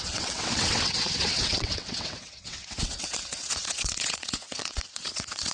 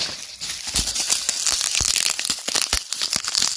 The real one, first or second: second